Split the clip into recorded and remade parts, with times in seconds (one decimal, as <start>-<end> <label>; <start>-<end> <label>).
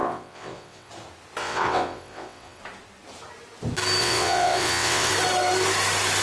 0.0-0.9 remade; 0.9-1.4 recorded; 1.4-2.6 remade; 2.6-4.0 recorded; 4.0-5.1 remade; 5.1-6.2 recorded